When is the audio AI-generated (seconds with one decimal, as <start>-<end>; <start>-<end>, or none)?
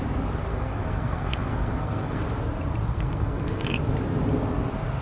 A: 0.5-2.2; 2.9-3.8